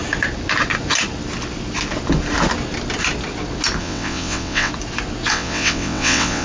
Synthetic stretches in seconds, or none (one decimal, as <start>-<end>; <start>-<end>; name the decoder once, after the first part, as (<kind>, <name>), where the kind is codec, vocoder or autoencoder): 3.8-4.7 (vocoder, WaveNeXt); 5.3-6.4